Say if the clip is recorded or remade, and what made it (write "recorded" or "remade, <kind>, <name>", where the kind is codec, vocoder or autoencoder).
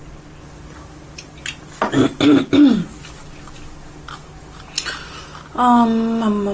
recorded